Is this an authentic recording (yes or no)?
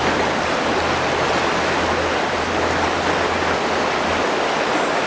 yes